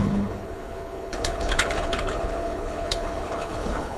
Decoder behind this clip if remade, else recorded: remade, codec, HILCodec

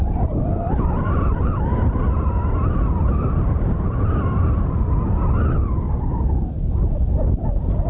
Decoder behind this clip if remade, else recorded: recorded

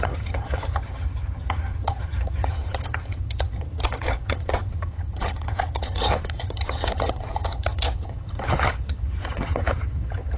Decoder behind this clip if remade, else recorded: remade, vocoder, HiFi-GAN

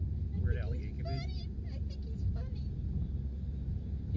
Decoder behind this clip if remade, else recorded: recorded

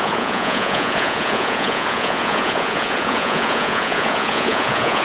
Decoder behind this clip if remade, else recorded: remade, vocoder, Vocos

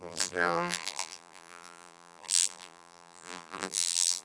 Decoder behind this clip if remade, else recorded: remade, vocoder, BigVGAN v2